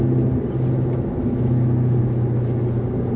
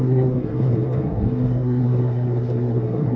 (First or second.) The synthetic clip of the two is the second